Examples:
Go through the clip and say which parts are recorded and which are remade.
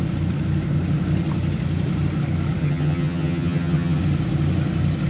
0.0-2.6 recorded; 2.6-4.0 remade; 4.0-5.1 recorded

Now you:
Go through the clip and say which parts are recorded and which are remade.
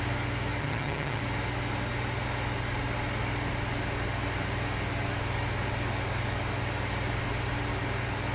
0.0-0.6 recorded; 0.6-1.2 remade; 1.2-8.3 recorded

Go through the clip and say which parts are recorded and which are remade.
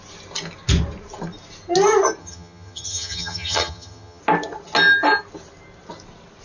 0.0-2.2 recorded; 2.2-4.2 remade; 4.2-6.4 recorded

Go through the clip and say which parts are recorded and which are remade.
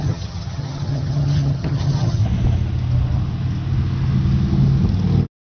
0.0-2.2 remade; 2.2-5.6 recorded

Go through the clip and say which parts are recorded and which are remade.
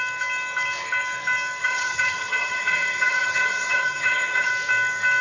0.0-1.6 recorded; 1.6-4.5 remade; 4.5-5.2 recorded